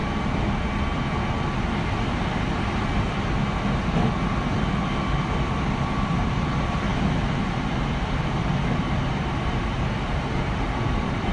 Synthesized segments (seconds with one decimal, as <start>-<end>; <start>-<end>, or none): 4.5-11.3

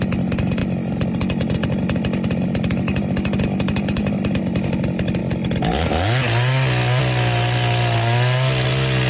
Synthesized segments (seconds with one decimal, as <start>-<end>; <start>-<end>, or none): none

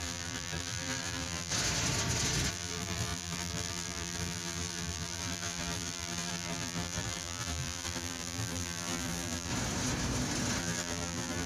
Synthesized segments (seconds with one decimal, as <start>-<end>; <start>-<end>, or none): 0.0-1.5; 2.5-9.5; 10.6-11.5